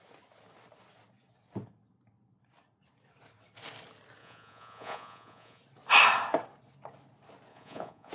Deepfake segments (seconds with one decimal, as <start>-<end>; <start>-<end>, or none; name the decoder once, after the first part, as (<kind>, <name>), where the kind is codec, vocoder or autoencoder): 4.2-5.6 (vocoder, Vocos); 7.5-8.1